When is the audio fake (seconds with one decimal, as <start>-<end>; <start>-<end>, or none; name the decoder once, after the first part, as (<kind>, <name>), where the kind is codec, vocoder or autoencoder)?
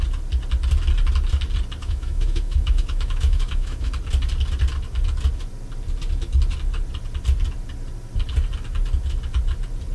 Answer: 1.8-3.9 (autoencoder, DAC-VAE)